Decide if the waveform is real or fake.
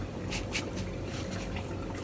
real